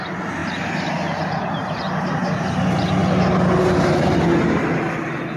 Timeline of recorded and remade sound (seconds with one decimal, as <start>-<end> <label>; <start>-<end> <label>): 0.0-5.4 recorded